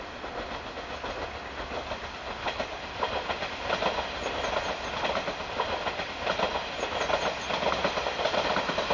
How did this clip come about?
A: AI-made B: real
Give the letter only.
B